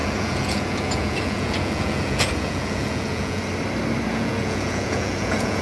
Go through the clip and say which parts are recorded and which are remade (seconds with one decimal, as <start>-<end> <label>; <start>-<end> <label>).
0.0-3.4 remade; 3.4-4.1 recorded; 4.1-5.6 remade